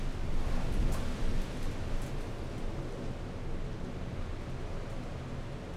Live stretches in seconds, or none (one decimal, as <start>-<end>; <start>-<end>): 0.0-5.8